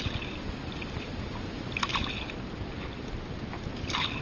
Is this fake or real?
real